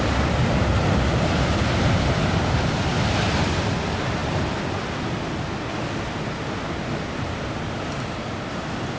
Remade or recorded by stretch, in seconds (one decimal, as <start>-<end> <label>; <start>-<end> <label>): 0.0-9.0 recorded

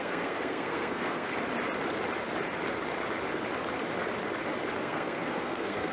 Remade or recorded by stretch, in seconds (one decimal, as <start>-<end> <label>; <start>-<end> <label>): 0.0-1.3 remade; 1.3-4.8 recorded; 4.8-5.9 remade